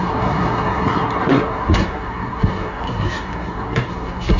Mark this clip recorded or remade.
remade